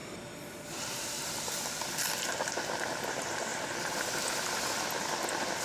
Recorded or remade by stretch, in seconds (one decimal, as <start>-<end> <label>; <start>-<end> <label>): 0.0-2.3 remade; 2.3-5.6 recorded

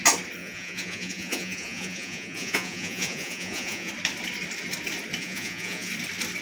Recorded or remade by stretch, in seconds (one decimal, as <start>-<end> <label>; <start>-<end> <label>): 0.0-0.4 recorded; 0.4-3.9 remade; 3.9-5.2 recorded; 5.2-5.9 remade; 5.9-6.4 recorded

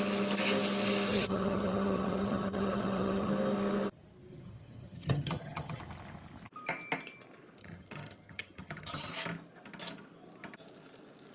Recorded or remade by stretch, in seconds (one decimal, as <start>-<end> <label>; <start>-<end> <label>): 0.0-1.1 recorded; 1.1-3.3 remade; 3.3-4.3 recorded; 4.3-5.8 remade; 5.8-7.6 recorded; 7.6-9.1 remade; 9.1-11.3 recorded